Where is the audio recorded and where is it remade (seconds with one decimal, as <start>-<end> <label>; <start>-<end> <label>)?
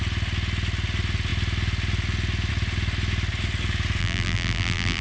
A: 0.0-4.0 recorded; 4.0-5.0 remade